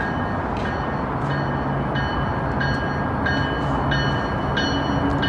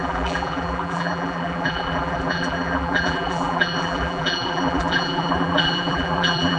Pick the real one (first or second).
first